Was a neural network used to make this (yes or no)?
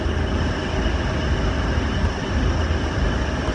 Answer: no